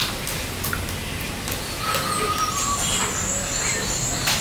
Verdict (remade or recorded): recorded